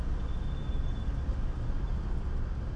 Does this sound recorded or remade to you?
recorded